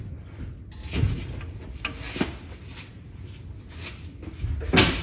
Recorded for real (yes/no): yes